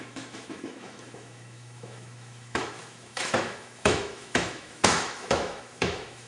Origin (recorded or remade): remade